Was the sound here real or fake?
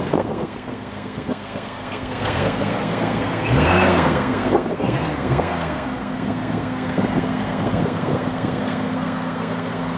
fake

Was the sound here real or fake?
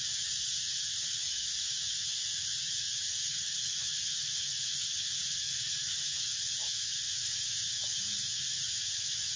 fake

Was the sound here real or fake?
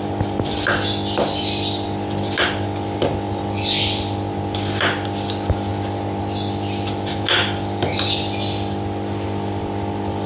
real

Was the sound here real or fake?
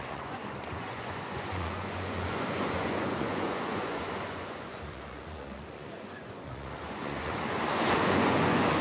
fake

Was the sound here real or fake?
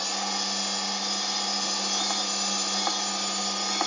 real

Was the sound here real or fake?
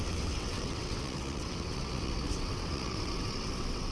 fake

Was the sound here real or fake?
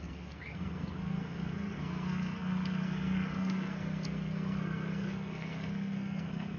fake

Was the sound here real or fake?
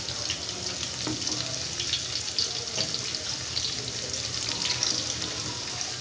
real